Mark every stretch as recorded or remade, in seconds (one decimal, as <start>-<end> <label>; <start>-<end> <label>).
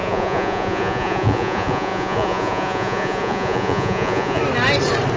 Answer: 0.0-4.4 remade; 4.4-5.2 recorded